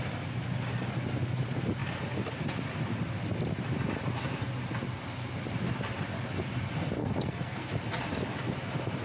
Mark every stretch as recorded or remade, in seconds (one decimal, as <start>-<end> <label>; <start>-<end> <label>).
0.0-7.0 recorded; 7.0-7.7 remade; 7.7-9.0 recorded